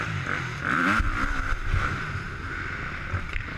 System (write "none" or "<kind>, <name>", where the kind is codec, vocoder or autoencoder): none